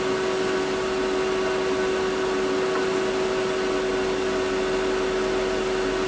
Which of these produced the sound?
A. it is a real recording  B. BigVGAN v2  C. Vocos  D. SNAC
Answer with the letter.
A